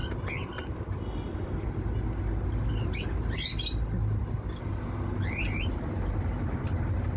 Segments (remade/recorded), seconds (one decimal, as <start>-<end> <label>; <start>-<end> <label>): 0.0-7.2 recorded